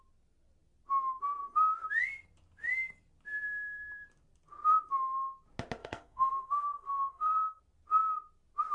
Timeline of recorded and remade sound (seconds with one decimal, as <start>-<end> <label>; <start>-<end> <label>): 0.0-5.8 recorded; 5.8-7.6 remade; 7.6-8.7 recorded